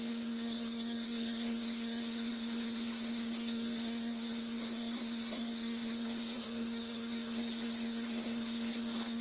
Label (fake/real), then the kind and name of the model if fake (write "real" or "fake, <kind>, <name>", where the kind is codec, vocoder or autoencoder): fake, codec, SNAC